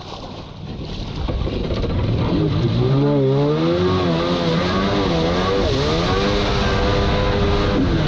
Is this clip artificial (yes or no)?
no